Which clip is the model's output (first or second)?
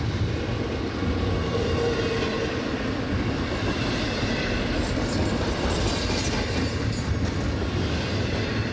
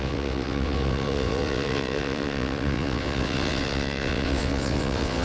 second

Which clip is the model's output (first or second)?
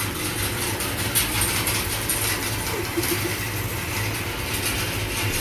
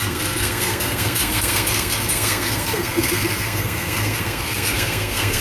second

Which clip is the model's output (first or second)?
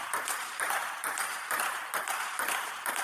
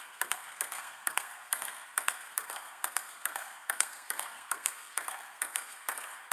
second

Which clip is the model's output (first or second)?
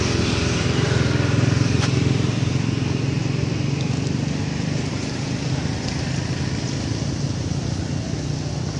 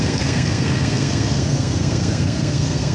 second